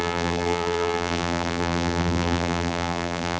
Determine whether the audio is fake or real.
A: fake